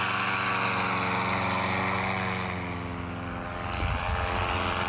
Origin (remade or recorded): recorded